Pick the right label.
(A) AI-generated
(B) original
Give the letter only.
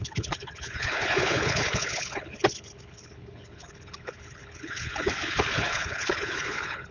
A